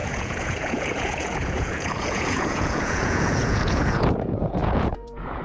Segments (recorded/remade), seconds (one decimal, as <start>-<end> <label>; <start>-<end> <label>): 0.0-5.4 remade